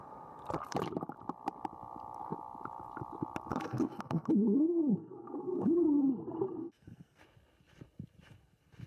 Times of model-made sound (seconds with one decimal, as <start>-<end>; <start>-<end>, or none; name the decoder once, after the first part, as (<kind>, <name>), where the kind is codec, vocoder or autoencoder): 3.5-6.1 (codec, SNAC); 6.6-7.2